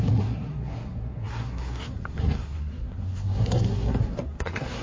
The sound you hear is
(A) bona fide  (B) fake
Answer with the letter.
B